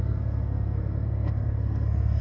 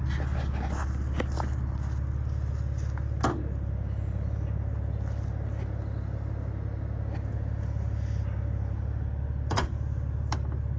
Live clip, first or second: second